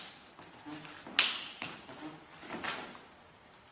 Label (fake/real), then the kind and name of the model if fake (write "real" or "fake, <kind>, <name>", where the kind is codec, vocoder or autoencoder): real